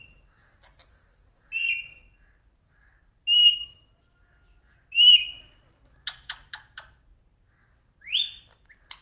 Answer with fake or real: real